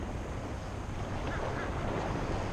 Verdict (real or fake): real